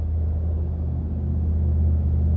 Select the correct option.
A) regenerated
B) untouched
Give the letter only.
B